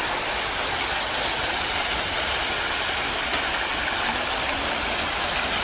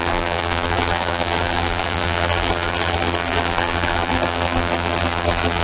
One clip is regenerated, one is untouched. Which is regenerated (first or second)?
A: second